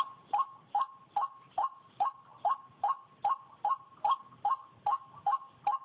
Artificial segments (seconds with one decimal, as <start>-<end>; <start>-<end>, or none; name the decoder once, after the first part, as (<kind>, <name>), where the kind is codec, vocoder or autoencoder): none